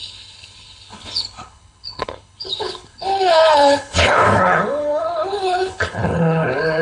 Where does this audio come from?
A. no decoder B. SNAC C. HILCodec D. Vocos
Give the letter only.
C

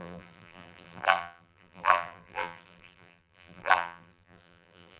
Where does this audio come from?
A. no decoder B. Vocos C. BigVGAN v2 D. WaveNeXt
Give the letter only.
C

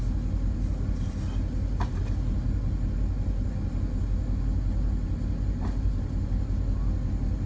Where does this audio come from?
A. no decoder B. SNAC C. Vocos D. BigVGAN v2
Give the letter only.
A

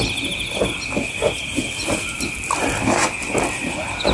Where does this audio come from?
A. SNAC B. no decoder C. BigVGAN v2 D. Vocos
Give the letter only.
B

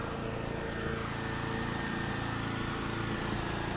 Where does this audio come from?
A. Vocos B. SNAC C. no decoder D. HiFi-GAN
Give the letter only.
C